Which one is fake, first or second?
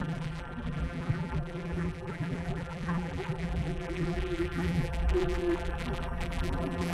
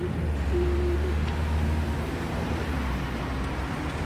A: first